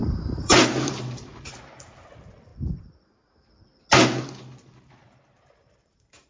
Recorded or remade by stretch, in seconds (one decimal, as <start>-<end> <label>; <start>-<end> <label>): 0.0-2.5 remade; 2.5-4.8 recorded; 4.8-6.3 remade

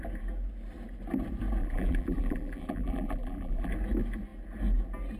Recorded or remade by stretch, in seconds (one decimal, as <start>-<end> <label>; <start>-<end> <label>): 0.0-1.6 recorded; 1.6-3.7 remade; 3.7-5.2 recorded

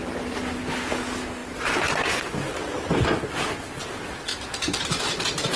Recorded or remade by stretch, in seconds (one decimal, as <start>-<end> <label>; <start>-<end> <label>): 0.0-4.3 recorded; 4.3-5.6 remade

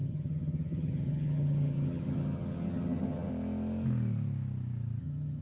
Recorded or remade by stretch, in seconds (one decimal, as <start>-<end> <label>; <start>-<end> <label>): 0.0-3.3 remade; 3.3-5.0 recorded; 5.0-5.4 remade

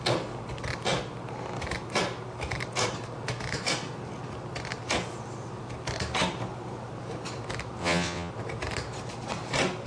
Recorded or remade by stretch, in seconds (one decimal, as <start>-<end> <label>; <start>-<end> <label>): 0.0-7.8 recorded; 7.8-8.3 remade; 8.3-9.9 recorded

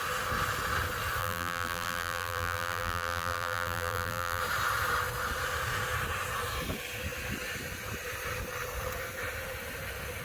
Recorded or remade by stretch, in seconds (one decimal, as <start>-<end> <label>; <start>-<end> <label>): 0.0-1.2 recorded; 1.2-4.4 remade; 4.4-10.2 recorded